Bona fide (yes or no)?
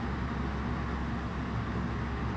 yes